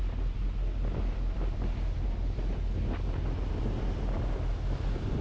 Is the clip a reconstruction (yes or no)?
no